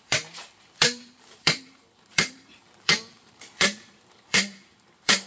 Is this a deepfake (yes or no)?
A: yes